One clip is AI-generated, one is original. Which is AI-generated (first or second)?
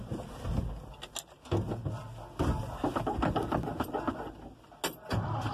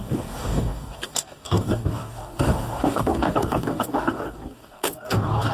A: second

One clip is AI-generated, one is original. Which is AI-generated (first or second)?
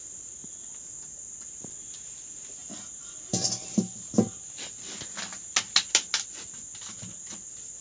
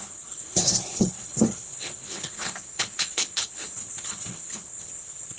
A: second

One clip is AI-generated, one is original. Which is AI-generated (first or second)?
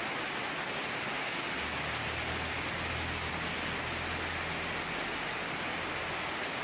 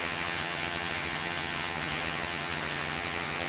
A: second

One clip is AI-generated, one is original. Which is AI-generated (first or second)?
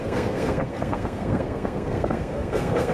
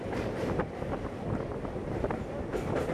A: first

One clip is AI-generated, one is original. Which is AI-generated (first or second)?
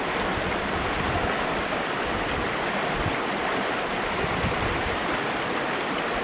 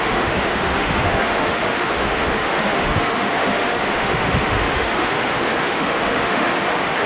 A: second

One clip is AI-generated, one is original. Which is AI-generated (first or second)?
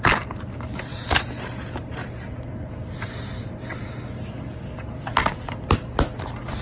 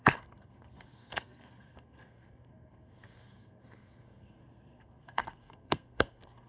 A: second